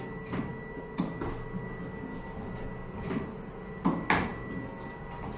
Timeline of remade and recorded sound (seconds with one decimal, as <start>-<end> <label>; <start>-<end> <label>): 0.0-5.4 recorded